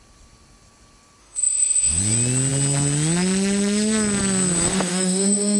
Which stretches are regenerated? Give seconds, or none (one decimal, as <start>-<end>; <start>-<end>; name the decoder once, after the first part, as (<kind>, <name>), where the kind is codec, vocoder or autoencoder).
1.2-2.0 (autoencoder, DAC-VAE); 4.7-5.6